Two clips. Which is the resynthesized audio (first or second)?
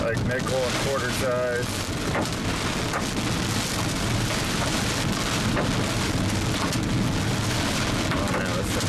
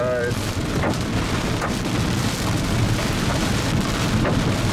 second